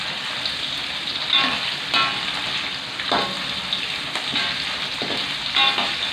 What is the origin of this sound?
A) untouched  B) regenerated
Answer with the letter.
A